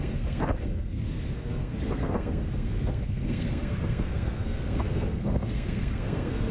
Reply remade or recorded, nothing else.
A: remade